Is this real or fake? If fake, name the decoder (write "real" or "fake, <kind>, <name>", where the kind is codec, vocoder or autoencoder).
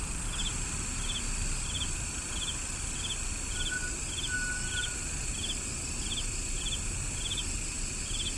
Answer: real